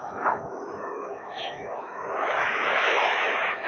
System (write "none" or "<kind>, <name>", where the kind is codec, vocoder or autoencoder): autoencoder, DAC-VAE